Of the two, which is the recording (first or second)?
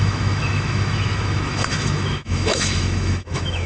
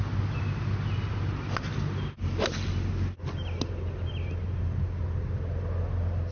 second